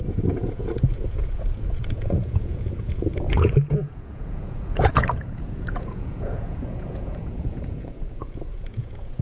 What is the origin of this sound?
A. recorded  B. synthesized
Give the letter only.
B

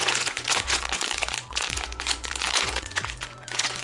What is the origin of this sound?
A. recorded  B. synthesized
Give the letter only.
B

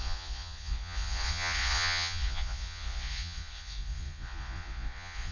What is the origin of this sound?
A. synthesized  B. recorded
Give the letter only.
A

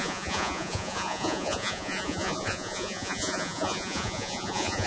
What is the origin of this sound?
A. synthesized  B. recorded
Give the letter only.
A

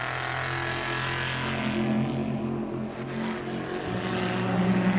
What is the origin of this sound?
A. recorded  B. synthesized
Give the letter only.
A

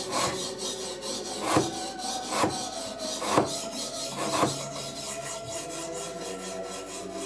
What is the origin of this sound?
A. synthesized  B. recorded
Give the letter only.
B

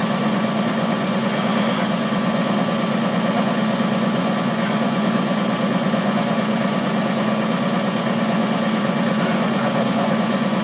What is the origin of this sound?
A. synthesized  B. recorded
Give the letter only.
A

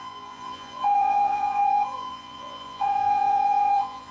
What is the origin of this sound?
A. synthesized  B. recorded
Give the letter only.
A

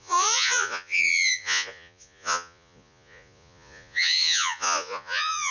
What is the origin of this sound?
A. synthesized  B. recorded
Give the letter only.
A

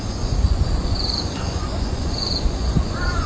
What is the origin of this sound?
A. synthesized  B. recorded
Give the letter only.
A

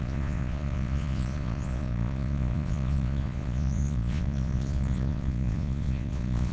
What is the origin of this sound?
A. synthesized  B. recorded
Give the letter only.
A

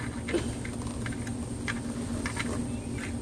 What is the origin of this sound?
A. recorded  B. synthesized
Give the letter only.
A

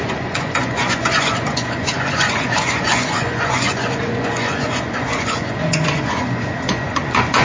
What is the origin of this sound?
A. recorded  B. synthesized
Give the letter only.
B